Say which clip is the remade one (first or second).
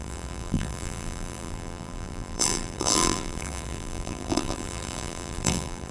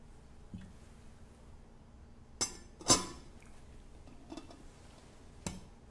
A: first